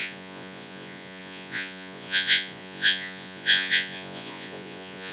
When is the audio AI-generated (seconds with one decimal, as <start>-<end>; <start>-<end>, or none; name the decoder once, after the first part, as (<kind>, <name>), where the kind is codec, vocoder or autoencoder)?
0.0-5.1 (vocoder, Vocos)